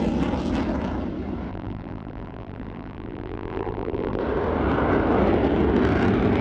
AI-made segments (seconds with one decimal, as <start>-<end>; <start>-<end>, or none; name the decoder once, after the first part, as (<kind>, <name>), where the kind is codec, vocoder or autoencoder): 1.5-4.2 (vocoder, BigVGAN v2)